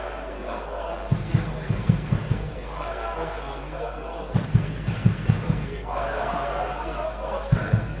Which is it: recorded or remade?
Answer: remade